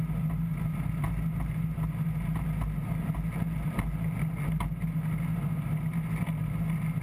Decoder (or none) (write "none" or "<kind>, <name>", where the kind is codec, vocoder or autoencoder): none